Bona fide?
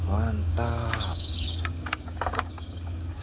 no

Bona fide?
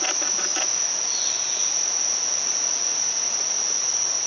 yes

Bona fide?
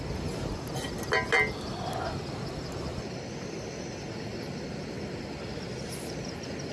yes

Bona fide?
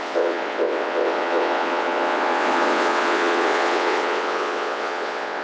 no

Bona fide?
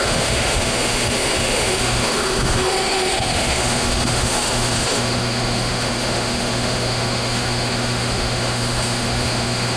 no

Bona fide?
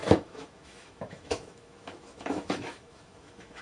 no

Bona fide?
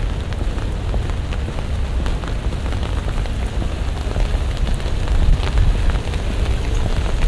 yes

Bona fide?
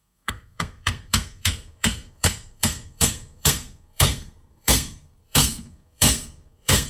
no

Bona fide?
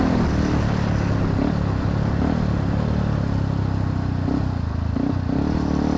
yes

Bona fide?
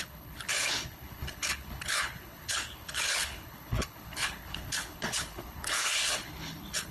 no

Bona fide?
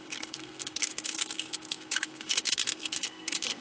no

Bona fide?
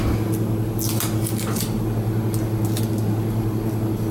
yes